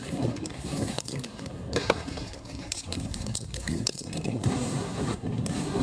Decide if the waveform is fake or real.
fake